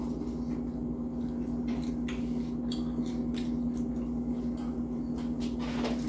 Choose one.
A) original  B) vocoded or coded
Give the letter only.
A